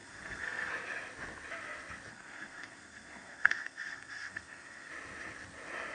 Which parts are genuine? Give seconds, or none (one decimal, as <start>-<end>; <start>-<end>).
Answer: 0.7-2.1; 4.9-5.9